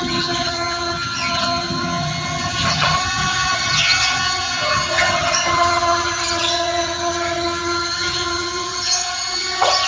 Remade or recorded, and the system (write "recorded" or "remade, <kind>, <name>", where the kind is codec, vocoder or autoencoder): remade, vocoder, HiFi-GAN